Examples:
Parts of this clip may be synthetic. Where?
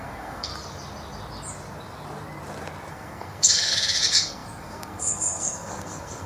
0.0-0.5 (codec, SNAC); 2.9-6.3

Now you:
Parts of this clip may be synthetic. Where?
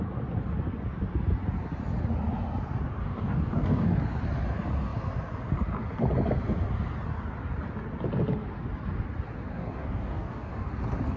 3.0-4.0 (codec, DAC); 9.5-10.7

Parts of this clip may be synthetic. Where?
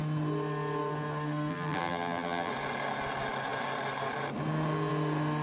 1.5-2.5 (vocoder, BigVGAN v2)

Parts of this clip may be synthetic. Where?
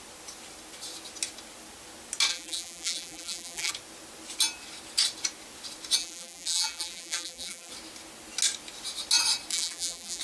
2.3-3.7 (vocoder, BigVGAN v2); 6.0-7.7; 9.5-10.2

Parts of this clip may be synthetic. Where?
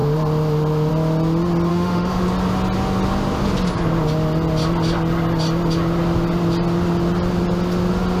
1.7-2.2 (autoencoder, DAC-VAE)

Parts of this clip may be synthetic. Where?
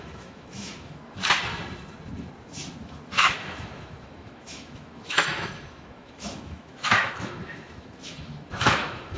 0.0-1.2 (autoencoder, DAC-VAE); 2.8-9.2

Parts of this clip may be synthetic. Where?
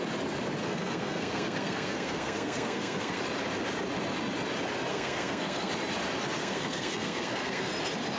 0.6-3.2 (codec, SNAC); 4.9-5.7; 6.4-7.7